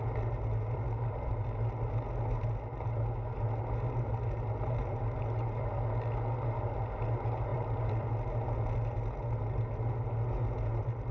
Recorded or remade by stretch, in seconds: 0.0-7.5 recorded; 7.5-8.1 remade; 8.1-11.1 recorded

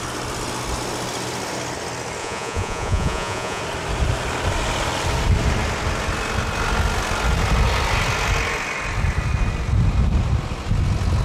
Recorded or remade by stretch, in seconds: 0.0-2.2 recorded; 2.2-3.6 remade; 3.6-11.2 recorded

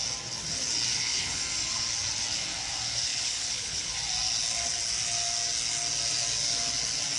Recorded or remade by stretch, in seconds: 0.0-0.9 recorded; 0.9-1.4 remade; 1.4-3.1 recorded; 3.1-3.9 remade; 3.9-7.2 recorded

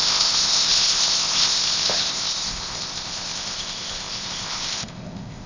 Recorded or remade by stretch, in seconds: 0.0-5.5 remade

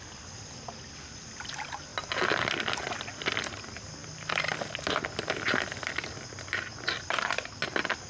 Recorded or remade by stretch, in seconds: 0.0-8.1 recorded

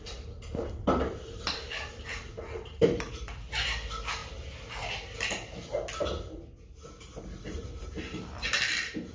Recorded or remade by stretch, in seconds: 0.0-4.2 remade; 4.2-7.2 recorded; 7.2-9.1 remade

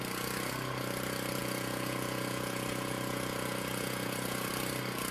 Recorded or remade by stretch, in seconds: 0.0-1.4 recorded; 1.4-4.5 remade; 4.5-5.1 recorded

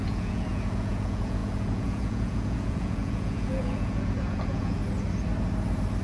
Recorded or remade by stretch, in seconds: 0.0-4.8 remade; 4.8-6.0 recorded